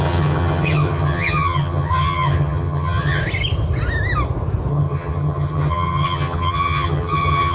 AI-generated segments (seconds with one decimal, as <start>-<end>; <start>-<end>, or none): 0.0-3.2; 4.7-7.5